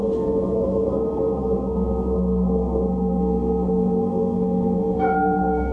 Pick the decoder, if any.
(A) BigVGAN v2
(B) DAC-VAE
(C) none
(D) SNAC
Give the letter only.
D